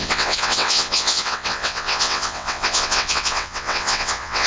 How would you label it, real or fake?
fake